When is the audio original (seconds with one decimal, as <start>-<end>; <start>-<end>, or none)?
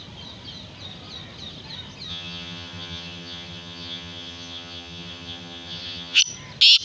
0.0-2.1; 6.2-6.8